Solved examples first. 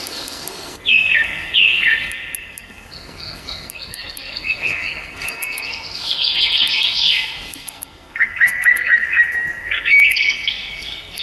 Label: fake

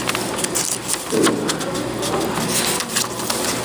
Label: real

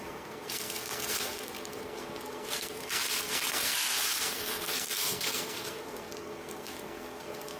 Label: fake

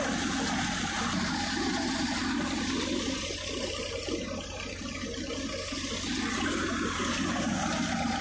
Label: real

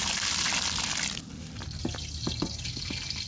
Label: real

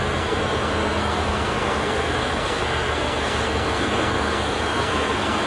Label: fake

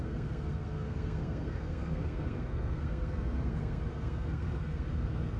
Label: fake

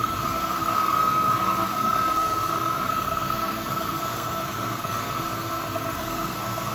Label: fake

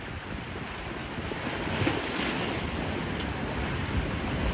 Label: real